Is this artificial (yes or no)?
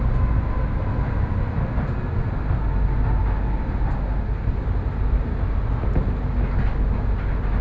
no